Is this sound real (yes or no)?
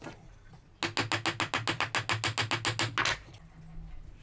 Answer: yes